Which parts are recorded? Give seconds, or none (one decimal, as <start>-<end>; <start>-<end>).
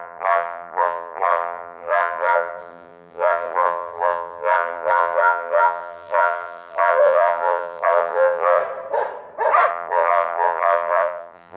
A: 8.6-9.7